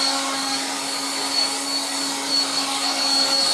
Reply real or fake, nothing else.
fake